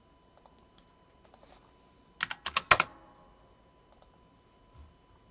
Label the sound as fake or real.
real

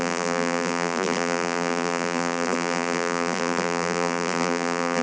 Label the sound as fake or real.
fake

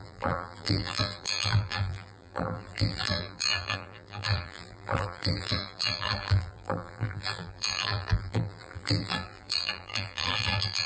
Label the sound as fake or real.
fake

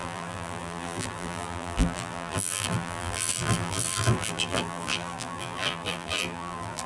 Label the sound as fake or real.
fake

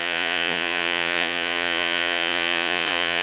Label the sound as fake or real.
fake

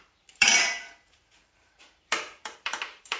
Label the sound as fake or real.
fake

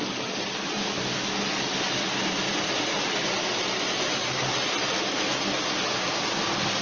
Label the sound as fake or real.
real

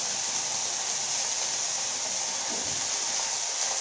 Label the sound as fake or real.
real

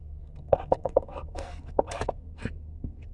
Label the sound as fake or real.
fake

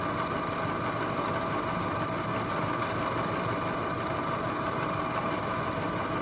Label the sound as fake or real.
real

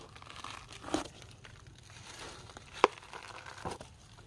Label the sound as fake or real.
real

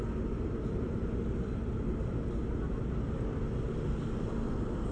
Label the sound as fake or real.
real